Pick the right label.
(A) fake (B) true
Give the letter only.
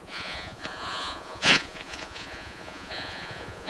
A